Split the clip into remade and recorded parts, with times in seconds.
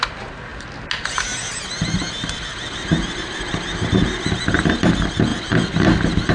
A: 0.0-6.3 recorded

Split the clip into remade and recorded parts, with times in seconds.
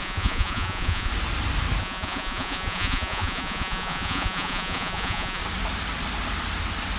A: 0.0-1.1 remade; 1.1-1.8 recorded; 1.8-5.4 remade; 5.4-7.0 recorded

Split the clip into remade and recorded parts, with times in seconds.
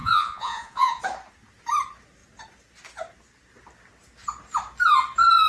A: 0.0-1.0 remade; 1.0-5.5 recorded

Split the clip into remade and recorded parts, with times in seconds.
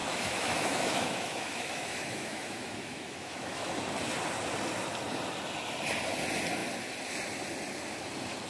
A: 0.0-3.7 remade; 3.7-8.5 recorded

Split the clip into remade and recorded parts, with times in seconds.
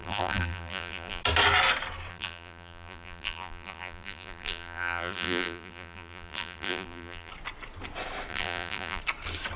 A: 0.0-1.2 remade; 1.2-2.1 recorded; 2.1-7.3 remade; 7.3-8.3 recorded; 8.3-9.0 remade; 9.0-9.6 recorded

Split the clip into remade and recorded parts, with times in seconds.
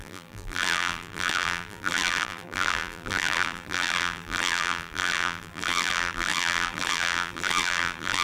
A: 0.0-8.2 remade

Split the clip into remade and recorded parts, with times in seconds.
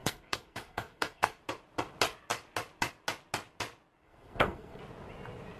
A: 0.0-1.4 remade; 1.4-4.0 recorded; 4.0-4.8 remade; 4.8-5.6 recorded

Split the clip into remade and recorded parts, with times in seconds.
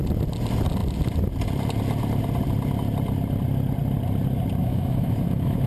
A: 0.0-4.6 recorded; 4.6-5.7 remade